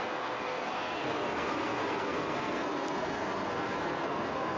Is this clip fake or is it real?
fake